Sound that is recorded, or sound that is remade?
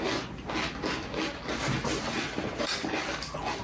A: recorded